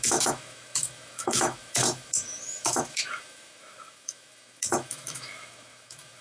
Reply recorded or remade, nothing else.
remade